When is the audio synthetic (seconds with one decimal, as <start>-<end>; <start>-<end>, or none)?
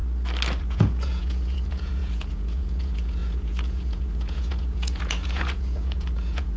0.6-6.6